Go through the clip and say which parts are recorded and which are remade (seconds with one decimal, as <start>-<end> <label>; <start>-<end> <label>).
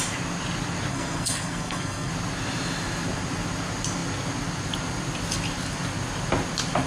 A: 0.0-0.9 recorded; 0.9-2.1 remade; 2.1-6.9 recorded